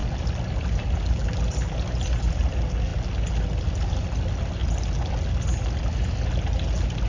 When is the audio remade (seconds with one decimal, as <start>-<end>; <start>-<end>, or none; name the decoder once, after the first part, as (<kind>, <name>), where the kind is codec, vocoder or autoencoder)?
none